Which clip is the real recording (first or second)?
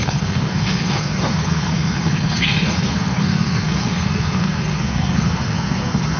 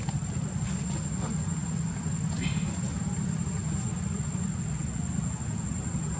second